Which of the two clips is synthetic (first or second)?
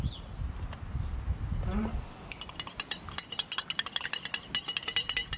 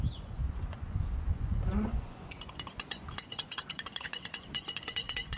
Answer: second